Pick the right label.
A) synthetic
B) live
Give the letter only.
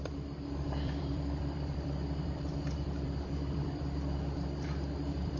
A